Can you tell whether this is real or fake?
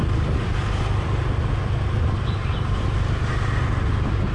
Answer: real